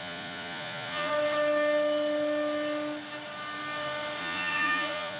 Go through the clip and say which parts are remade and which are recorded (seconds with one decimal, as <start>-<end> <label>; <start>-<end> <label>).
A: 0.0-1.1 remade; 1.1-4.2 recorded; 4.2-5.2 remade